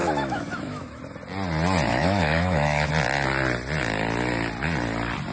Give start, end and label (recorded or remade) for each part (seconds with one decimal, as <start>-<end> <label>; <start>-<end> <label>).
0.0-1.0 remade; 1.0-1.9 recorded; 1.9-2.9 remade; 2.9-5.3 recorded